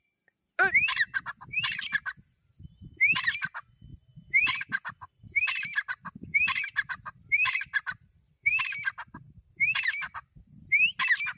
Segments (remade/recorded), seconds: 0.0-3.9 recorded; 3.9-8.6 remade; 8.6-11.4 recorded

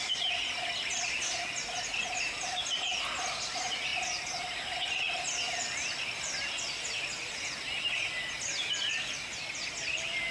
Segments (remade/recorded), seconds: 0.0-10.3 recorded

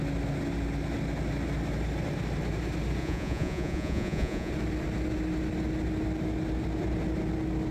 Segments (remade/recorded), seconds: 0.0-3.0 recorded; 3.0-4.5 remade; 4.5-7.7 recorded

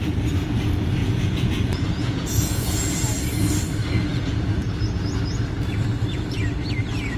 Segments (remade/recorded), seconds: 0.0-1.0 recorded; 1.0-2.9 remade; 2.9-4.1 recorded; 4.1-4.7 remade; 4.7-7.2 recorded